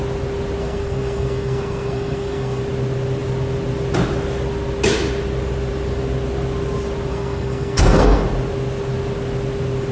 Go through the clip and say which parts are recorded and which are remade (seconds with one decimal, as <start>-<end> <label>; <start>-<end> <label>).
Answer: 0.0-0.6 recorded; 0.6-2.6 remade; 2.6-7.1 recorded; 7.1-8.2 remade; 8.2-9.9 recorded